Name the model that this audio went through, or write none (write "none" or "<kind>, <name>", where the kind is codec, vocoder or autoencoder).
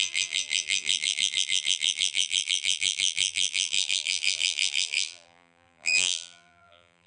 vocoder, BigVGAN v2